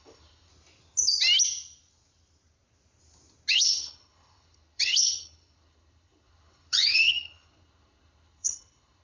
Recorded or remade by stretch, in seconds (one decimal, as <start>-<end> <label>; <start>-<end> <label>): 0.0-0.5 remade; 0.5-3.5 recorded; 3.5-9.0 remade